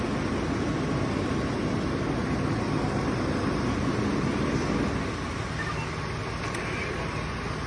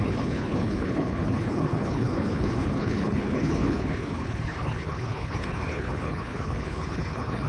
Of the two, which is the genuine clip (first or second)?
first